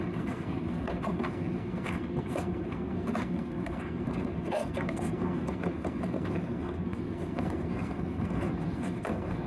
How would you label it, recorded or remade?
remade